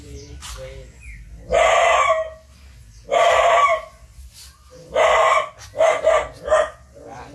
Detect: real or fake real